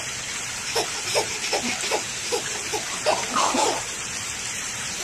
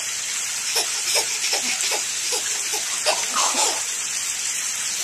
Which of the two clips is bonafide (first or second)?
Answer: second